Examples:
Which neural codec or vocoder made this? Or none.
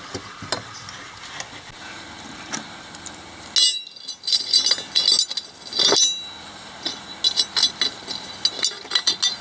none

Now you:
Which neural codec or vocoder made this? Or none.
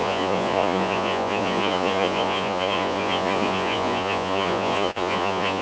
vocoder, Vocos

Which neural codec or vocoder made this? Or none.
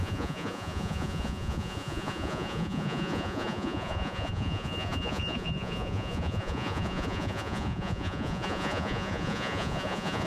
vocoder, Vocos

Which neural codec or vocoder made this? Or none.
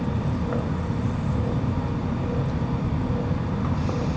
none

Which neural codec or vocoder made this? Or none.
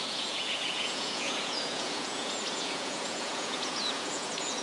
vocoder, Vocos